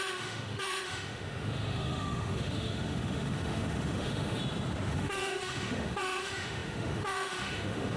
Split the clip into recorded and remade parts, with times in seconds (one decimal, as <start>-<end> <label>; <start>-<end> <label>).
0.0-4.4 remade; 4.4-4.9 recorded; 4.9-8.0 remade